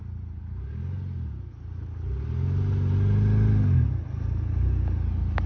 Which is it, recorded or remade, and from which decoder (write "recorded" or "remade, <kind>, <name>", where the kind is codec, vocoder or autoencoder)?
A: recorded